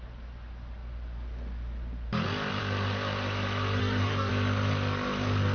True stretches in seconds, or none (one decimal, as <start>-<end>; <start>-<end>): 0.0-3.8; 4.3-5.5